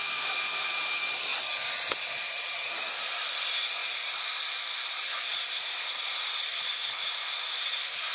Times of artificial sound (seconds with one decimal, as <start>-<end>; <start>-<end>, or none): 0.0-3.8; 4.4-8.1

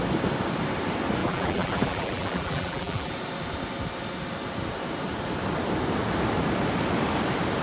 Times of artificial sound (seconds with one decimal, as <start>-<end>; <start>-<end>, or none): 1.2-3.1